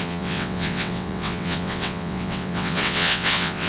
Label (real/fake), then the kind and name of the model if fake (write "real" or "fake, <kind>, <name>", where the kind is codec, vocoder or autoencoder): fake, vocoder, WaveNeXt